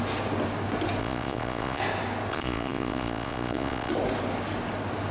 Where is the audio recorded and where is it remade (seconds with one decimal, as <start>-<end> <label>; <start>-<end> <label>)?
0.0-1.0 recorded; 1.0-1.8 remade; 1.8-2.3 recorded; 2.3-3.9 remade; 3.9-5.1 recorded